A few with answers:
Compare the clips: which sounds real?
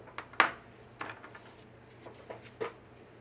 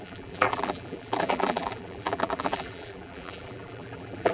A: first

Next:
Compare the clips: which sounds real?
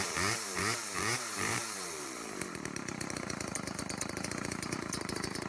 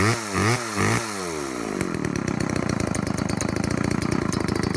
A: second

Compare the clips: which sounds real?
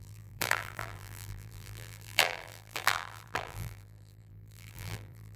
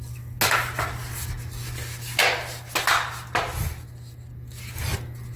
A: second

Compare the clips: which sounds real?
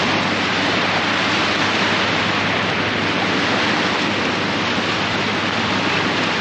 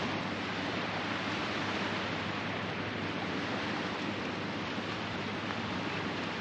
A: first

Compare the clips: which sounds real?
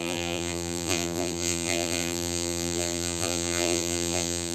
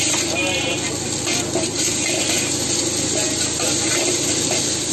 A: second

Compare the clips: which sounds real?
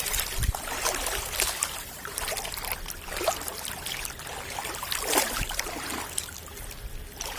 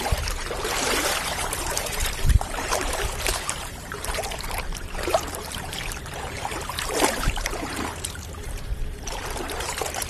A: first